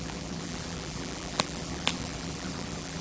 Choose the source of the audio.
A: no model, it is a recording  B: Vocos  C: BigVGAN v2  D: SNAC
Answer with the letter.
C